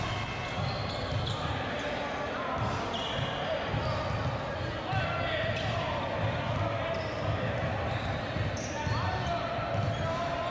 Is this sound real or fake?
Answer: real